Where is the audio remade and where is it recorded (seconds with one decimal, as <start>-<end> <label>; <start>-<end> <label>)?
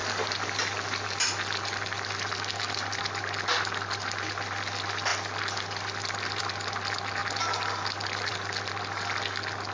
0.0-9.7 recorded